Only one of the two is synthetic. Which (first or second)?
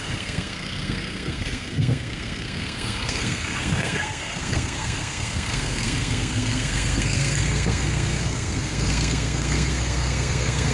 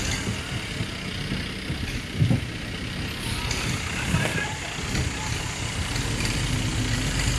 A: first